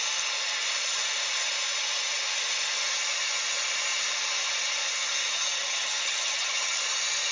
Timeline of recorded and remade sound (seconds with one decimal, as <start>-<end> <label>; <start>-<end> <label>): 0.0-5.3 recorded; 5.3-6.8 remade; 6.8-7.3 recorded